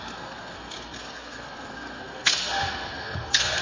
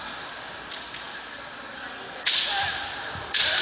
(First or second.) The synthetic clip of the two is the first